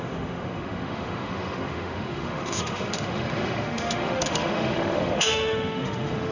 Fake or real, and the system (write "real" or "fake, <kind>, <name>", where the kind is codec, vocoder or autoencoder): fake, autoencoder, DAC-VAE